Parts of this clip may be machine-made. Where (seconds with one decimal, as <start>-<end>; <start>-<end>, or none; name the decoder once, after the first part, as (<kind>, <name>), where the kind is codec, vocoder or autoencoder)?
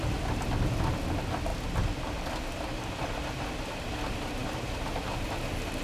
none